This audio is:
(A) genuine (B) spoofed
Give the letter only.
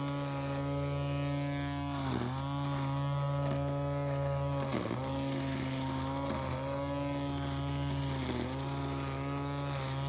A